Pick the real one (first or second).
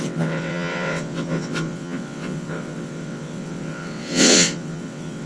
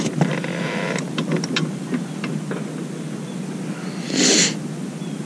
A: second